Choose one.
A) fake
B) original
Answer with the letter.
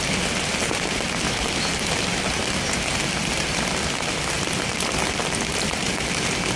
B